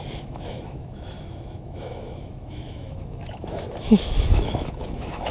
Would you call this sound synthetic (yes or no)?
yes